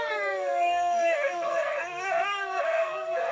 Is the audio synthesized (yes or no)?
yes